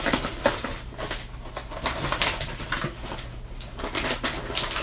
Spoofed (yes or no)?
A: no